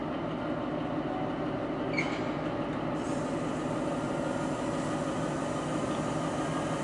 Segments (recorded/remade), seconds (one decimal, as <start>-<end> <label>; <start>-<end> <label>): 0.0-6.8 recorded